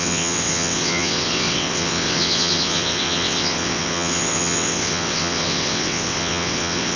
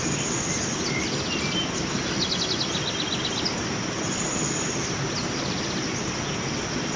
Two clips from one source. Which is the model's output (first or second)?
first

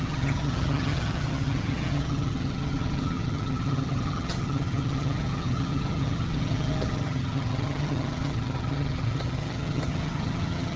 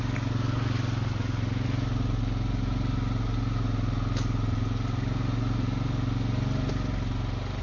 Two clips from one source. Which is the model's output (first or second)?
first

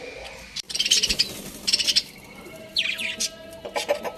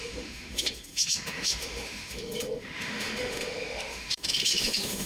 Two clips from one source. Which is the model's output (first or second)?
second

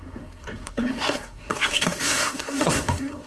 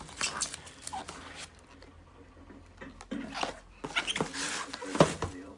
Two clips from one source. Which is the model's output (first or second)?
first